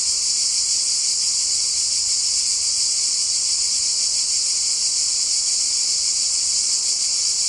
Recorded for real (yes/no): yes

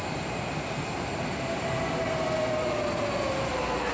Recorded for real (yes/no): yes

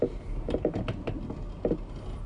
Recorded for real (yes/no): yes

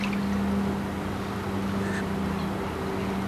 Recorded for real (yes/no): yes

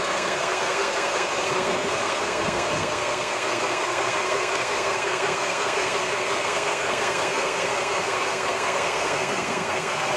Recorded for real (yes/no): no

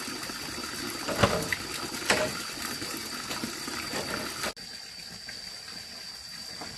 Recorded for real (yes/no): yes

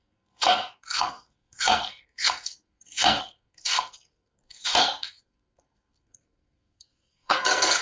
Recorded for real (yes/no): no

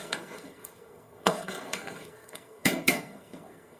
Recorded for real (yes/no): no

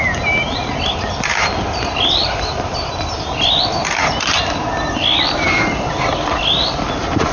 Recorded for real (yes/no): yes